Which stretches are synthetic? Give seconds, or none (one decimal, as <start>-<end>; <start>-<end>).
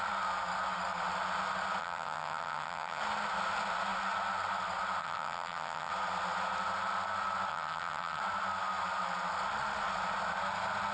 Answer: 1.8-3.0; 5.0-5.9; 7.5-8.2